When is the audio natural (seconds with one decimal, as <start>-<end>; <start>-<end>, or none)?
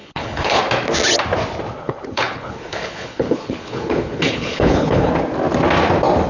0.6-1.8; 5.1-6.3